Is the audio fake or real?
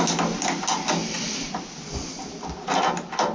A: real